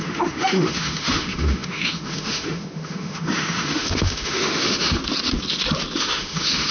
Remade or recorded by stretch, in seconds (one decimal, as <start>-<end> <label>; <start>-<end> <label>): 0.0-5.0 remade; 5.0-6.0 recorded; 6.0-6.7 remade